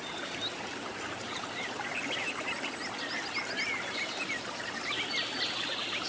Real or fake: real